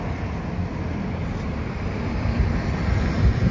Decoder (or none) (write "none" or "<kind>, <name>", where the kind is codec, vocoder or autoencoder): none